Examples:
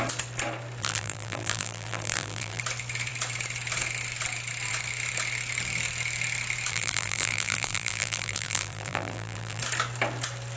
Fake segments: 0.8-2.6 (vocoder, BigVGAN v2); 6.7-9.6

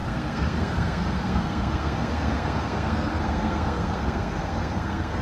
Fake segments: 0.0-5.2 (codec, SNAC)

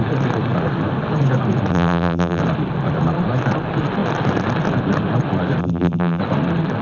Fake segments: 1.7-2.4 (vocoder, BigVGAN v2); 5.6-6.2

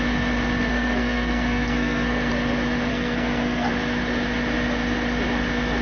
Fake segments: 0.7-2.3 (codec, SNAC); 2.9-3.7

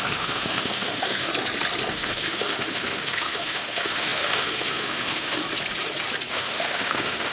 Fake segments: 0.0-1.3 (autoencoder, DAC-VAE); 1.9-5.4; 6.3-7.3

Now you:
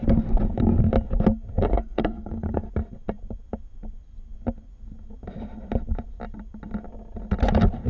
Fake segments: 1.7-2.7 (codec, SNAC)

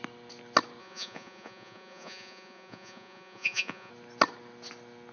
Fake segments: 0.8-3.9 (vocoder, Vocos)